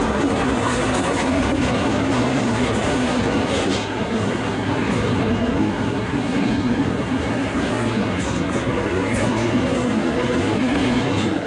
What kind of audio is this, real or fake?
fake